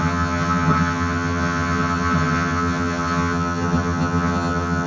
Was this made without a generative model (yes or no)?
no